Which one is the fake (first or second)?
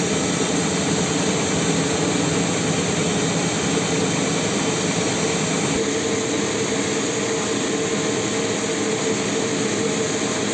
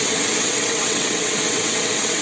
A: second